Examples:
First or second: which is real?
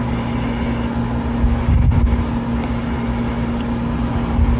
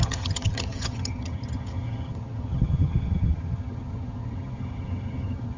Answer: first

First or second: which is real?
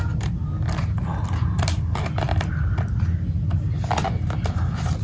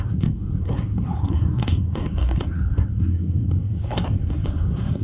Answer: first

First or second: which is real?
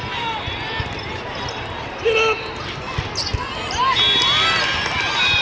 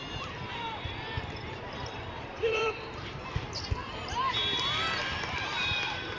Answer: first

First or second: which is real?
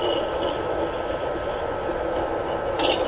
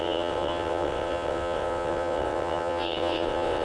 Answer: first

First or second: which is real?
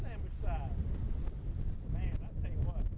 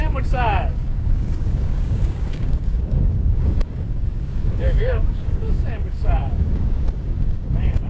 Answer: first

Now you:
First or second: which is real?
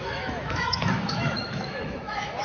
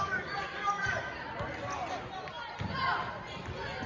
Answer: second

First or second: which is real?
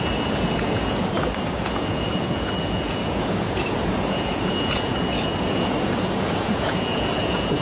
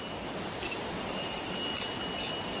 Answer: second